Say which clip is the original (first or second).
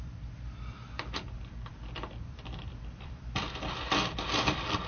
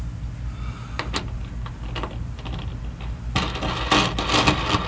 second